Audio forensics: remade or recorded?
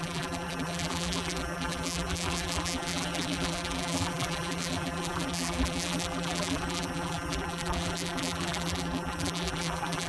remade